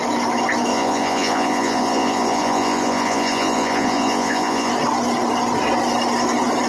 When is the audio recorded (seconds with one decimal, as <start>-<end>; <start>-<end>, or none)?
0.0-0.7; 4.7-6.7